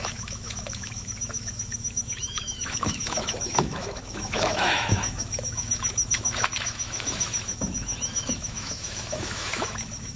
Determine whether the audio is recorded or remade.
remade